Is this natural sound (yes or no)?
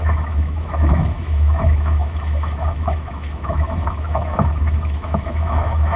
no